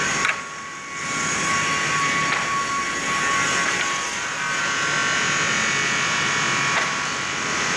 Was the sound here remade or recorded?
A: recorded